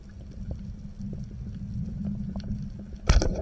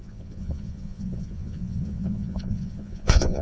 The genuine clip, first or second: first